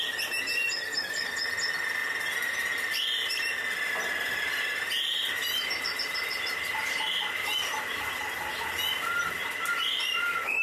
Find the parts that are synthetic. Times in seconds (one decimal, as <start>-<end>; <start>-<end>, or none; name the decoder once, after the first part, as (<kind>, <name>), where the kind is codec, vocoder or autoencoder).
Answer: none